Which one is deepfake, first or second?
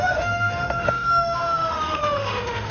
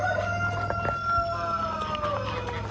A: first